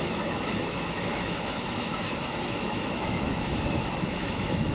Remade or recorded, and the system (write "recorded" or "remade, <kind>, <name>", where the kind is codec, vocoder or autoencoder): remade, autoencoder, DAC-VAE